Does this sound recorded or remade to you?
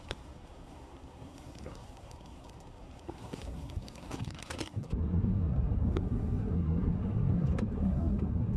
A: remade